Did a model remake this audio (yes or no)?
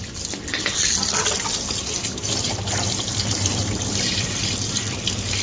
no